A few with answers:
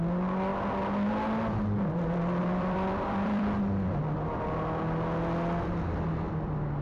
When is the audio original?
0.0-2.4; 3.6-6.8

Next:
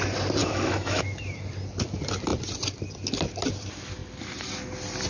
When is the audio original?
0.0-0.4; 1.0-5.1

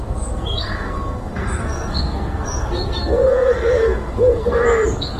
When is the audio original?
none

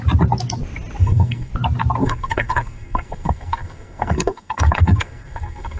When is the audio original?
0.0-1.0; 1.5-2.0

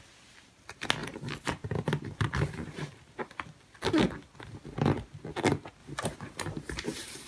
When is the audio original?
0.0-1.0; 3.3-5.8

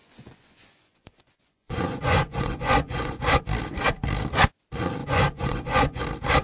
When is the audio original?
3.4-5.0; 6.0-6.4

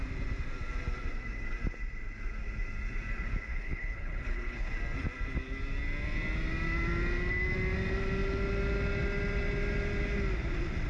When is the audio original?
0.0-3.5; 4.7-10.9